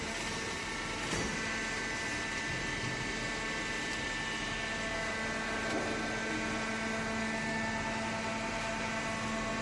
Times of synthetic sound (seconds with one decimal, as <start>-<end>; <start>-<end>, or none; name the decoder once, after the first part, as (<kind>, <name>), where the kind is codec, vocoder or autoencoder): none